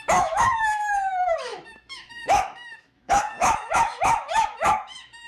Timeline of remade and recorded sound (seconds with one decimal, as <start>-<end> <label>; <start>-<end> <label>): 0.0-5.3 remade